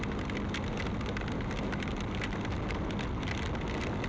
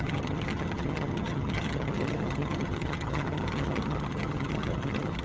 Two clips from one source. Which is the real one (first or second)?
first